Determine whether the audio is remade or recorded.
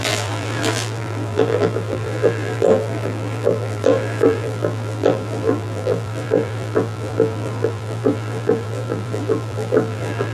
remade